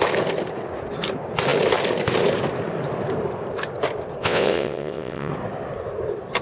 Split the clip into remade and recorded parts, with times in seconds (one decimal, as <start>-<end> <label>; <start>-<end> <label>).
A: 0.0-4.2 recorded; 4.2-5.3 remade; 5.3-6.4 recorded